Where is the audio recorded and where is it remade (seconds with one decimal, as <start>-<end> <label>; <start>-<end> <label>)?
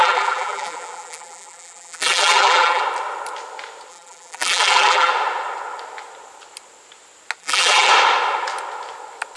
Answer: 0.0-2.8 remade; 2.8-3.9 recorded; 3.9-5.1 remade; 5.1-7.4 recorded; 7.4-7.9 remade; 7.9-9.4 recorded